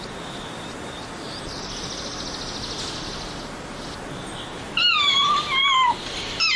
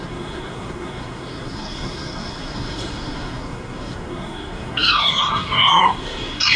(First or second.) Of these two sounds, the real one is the first